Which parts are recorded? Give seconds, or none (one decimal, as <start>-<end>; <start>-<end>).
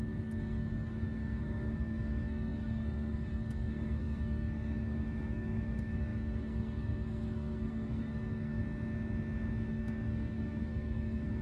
8.6-9.7